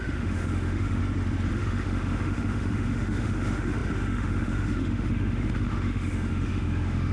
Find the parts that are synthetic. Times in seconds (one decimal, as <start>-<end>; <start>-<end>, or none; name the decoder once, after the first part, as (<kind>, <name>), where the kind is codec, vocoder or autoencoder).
0.0-1.0 (autoencoder, DAC-VAE); 1.5-7.1